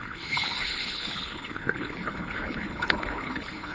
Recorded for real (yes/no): no